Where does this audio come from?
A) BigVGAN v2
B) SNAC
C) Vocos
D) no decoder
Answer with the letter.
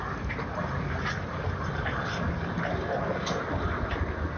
D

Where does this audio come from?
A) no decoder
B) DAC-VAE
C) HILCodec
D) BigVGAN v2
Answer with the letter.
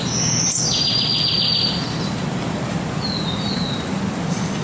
A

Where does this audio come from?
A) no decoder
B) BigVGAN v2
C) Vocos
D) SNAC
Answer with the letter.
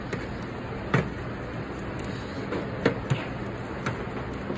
A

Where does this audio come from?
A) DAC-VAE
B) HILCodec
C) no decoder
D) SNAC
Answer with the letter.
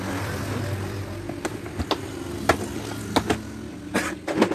C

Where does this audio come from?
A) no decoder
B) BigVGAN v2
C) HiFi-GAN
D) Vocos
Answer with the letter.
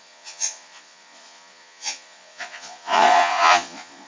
D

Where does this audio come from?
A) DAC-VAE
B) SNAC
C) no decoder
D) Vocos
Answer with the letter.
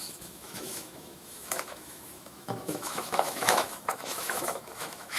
A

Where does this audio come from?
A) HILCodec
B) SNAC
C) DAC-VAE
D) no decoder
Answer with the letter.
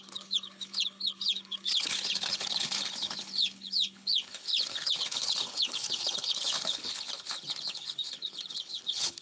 A